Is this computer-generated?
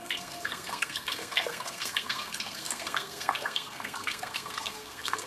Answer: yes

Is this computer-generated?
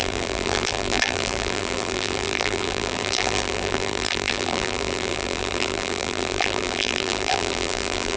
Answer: yes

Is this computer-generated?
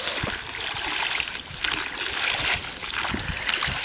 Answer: no